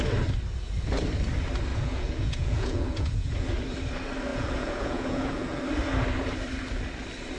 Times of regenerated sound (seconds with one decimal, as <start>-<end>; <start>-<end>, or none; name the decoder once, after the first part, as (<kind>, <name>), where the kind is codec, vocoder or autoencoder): 1.7-3.5 (vocoder, Vocos); 4.3-5.6